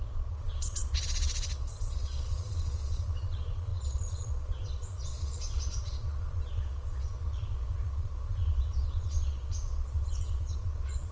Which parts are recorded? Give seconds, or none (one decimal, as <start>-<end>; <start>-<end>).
none